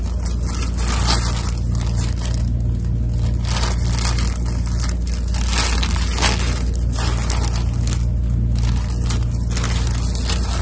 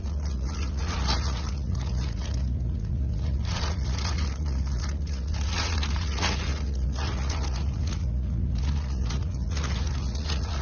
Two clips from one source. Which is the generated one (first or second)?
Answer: second